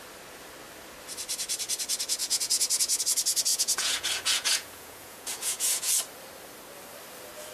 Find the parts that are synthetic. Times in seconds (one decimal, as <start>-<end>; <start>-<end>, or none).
2.2-3.0; 3.5-5.9